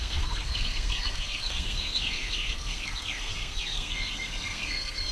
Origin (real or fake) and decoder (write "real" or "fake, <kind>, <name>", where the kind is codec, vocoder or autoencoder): fake, codec, SNAC